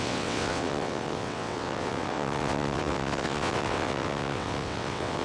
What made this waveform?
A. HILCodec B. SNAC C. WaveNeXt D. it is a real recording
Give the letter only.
C